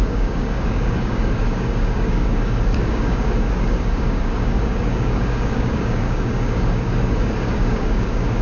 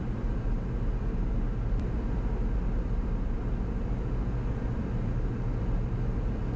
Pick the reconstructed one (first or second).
first